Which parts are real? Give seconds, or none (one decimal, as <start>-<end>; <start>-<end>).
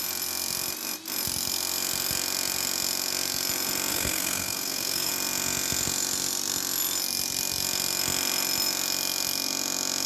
0.0-3.9; 5.1-10.1